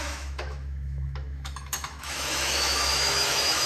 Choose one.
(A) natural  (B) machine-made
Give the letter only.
B